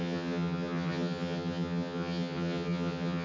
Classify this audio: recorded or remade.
remade